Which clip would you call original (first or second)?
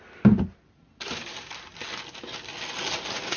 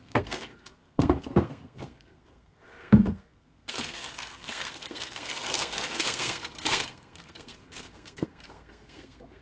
first